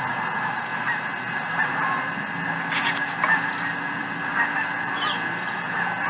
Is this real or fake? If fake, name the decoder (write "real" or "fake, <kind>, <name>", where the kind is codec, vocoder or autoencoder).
real